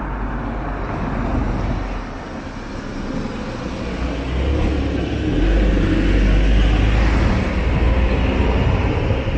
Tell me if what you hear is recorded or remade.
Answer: recorded